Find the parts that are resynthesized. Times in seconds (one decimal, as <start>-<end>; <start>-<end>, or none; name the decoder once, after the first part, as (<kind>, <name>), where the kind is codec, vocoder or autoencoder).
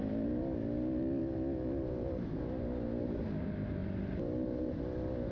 none